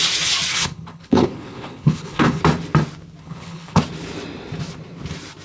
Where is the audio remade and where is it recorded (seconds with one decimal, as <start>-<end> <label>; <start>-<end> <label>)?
0.0-0.5 recorded; 0.5-2.4 remade; 2.4-3.2 recorded; 3.2-3.8 remade; 3.8-5.4 recorded